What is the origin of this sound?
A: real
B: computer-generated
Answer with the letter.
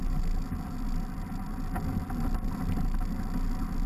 A